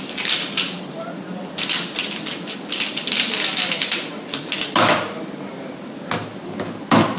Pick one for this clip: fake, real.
fake